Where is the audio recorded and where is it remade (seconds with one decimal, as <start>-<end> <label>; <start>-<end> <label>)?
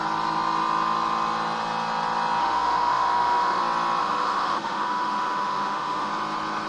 0.0-2.4 recorded; 2.4-3.6 remade; 3.6-4.0 recorded; 4.0-6.1 remade; 6.1-6.7 recorded